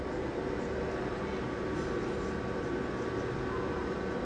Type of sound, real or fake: real